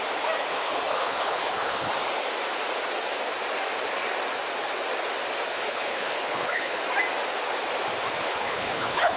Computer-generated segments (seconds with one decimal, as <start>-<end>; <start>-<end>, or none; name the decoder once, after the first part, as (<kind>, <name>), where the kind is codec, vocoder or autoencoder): 0.5-1.9 (codec, HILCodec); 5.5-6.8; 8.2-9.2